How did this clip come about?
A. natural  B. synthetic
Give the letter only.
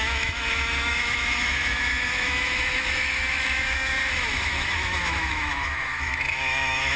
B